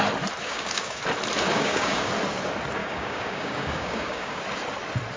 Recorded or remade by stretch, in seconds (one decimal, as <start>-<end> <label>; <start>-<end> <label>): 0.0-0.4 recorded; 0.4-1.0 remade; 1.0-1.5 recorded; 1.5-2.1 remade; 2.1-2.8 recorded; 2.8-4.4 remade; 4.4-5.2 recorded